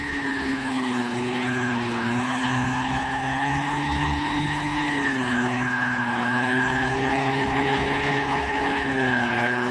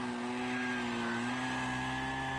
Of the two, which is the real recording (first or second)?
second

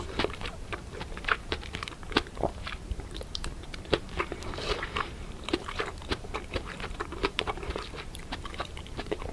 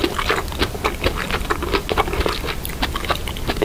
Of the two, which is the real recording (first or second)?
second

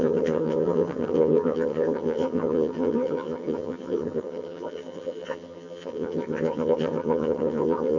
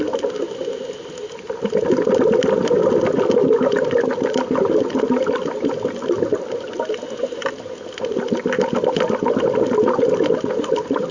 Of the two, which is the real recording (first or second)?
second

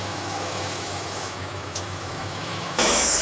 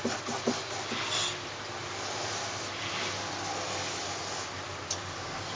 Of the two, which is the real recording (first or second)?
second